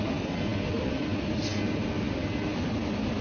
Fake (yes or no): no